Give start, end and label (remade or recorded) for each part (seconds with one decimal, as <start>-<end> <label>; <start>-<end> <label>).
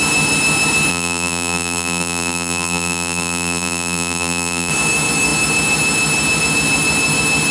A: 0.0-0.9 recorded; 0.9-4.7 remade; 4.7-7.5 recorded